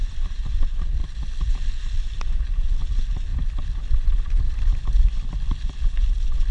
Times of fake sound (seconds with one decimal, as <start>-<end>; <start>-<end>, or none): 0.0-0.6; 1.0-1.6; 3.3-5.2